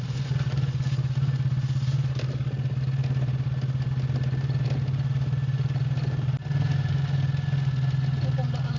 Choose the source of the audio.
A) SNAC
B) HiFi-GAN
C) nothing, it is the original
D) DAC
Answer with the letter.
C